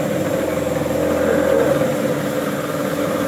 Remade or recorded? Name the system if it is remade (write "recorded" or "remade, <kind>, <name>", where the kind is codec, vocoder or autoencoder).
recorded